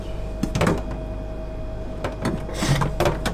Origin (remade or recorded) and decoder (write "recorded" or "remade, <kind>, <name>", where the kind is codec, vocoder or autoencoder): recorded